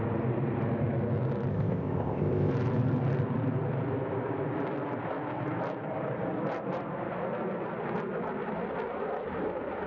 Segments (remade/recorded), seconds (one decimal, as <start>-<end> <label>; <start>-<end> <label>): 0.0-1.5 recorded; 1.5-2.5 remade; 2.5-9.9 recorded